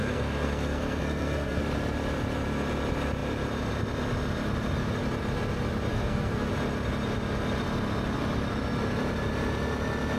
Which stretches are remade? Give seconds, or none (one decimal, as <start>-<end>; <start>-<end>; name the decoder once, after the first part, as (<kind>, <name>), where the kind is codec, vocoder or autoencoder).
0.0-1.6 (codec, SNAC); 5.9-6.5